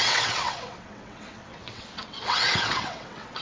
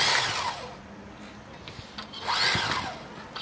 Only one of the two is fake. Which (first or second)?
first